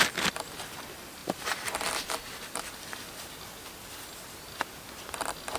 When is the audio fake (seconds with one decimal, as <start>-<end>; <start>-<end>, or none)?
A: 1.2-2.6